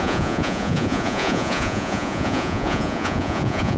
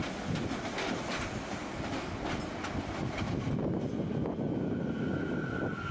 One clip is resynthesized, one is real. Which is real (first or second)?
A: second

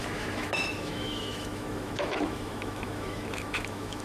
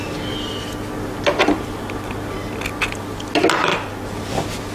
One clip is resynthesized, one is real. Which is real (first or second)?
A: second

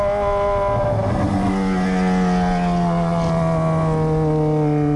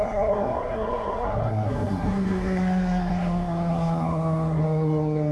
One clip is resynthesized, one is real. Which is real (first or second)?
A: first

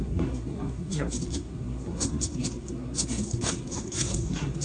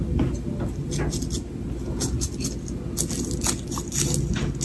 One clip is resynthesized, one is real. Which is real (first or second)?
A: second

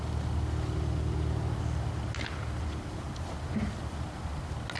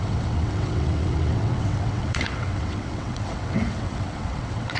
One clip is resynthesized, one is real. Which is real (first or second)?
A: first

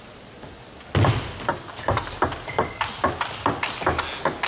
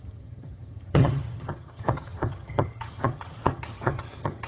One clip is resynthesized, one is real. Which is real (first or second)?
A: first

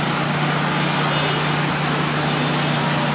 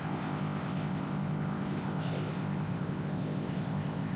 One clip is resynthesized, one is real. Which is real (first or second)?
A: first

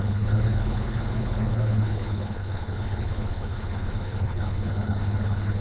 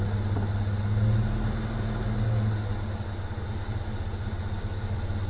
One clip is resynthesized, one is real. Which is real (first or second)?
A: second